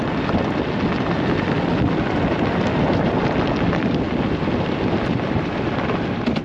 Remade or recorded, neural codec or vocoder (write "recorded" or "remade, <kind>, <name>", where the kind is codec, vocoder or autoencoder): recorded